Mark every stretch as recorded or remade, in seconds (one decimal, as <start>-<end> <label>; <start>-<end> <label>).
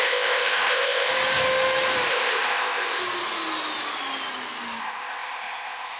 0.0-1.1 remade; 1.1-2.1 recorded; 2.1-3.0 remade; 3.0-4.8 recorded; 4.8-6.0 remade